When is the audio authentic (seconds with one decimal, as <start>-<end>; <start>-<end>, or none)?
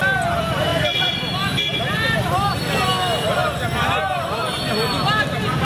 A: 0.0-5.6